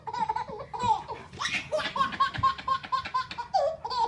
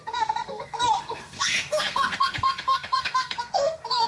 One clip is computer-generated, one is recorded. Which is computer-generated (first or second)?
second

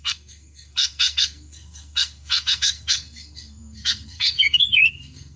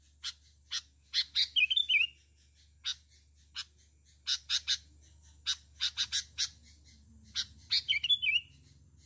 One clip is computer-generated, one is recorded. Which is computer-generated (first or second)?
first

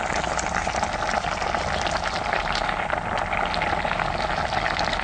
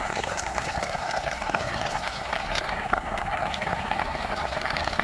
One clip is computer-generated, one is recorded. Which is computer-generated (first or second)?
second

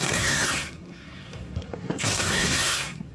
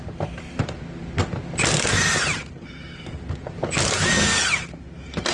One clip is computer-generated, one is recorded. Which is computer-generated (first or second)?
first